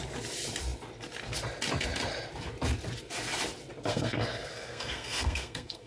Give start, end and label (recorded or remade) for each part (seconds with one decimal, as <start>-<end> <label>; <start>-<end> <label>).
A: 0.0-3.9 recorded; 3.9-5.9 remade